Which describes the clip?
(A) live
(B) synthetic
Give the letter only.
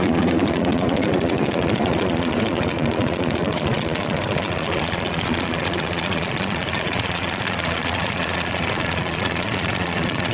B